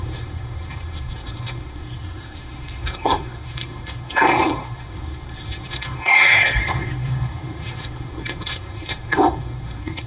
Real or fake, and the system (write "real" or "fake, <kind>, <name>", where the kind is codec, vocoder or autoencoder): fake, codec, SNAC